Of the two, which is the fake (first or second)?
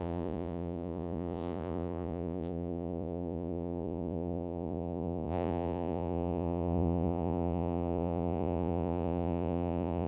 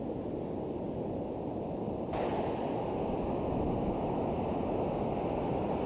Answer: first